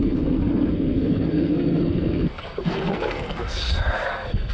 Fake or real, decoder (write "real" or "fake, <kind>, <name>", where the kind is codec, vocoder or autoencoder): fake, codec, SNAC